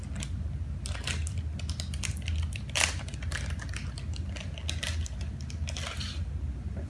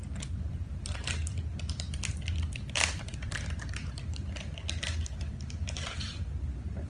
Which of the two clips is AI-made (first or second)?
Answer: second